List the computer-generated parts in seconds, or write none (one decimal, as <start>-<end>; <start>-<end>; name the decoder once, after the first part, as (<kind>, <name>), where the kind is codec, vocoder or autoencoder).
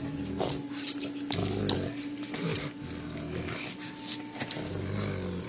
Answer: none